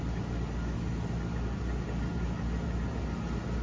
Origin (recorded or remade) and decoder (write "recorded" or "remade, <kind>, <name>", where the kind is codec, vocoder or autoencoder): recorded